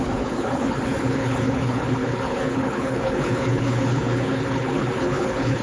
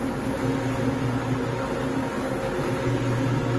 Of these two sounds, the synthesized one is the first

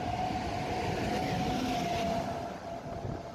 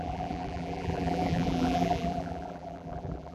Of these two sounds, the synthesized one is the second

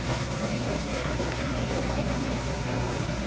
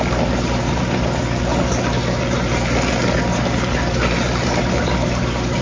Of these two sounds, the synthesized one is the first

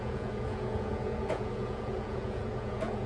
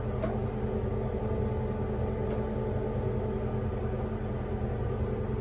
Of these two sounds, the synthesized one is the first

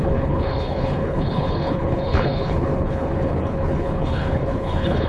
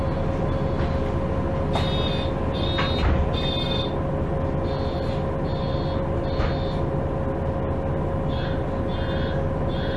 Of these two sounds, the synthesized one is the first